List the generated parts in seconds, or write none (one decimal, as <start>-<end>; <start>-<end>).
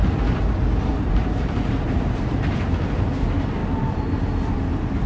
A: 0.9-3.1; 3.6-4.6